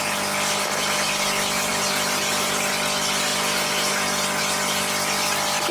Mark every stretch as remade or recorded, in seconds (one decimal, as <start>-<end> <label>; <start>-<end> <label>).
0.0-5.7 recorded